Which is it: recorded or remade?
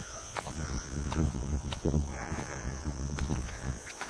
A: remade